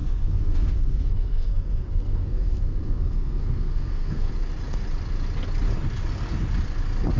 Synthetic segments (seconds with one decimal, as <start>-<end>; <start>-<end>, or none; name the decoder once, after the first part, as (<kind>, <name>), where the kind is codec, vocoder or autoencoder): 0.0-4.3 (codec, SNAC)